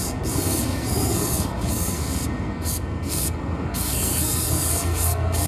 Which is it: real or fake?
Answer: fake